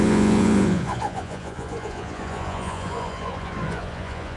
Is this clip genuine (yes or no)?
no